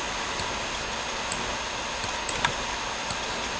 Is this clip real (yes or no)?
yes